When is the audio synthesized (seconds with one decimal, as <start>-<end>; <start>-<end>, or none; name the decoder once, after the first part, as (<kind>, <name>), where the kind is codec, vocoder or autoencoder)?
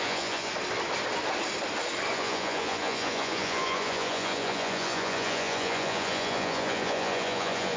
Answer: 0.0-0.5 (vocoder, Vocos); 2.1-7.8